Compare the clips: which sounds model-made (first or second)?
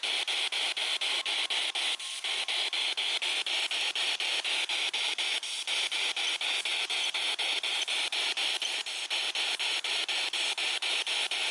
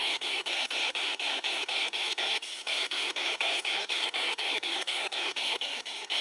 second